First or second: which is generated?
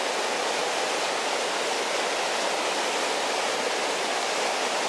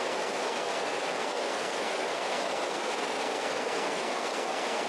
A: second